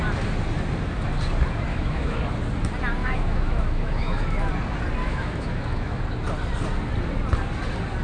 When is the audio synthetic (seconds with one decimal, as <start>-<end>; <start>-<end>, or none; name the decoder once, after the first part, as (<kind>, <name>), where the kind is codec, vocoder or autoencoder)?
1.7-2.2 (autoencoder, DAC-VAE); 3.0-4.5; 5.0-6.0